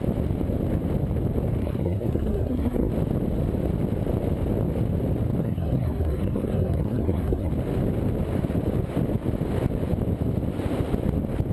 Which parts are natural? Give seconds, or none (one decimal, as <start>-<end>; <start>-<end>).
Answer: 0.0-1.6; 2.9-5.4; 7.5-11.5